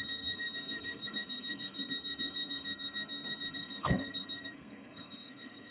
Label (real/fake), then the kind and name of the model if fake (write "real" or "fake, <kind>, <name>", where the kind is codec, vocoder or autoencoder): fake, codec, SNAC